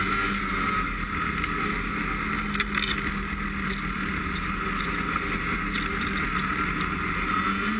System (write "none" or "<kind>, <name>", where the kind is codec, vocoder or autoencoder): none